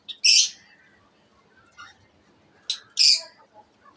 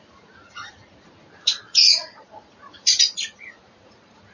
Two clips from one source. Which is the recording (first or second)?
first